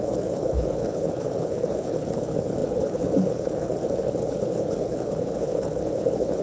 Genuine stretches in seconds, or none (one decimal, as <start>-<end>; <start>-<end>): none